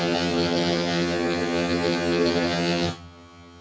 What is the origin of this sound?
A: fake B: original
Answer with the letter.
A